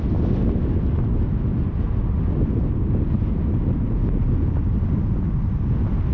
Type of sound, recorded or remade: recorded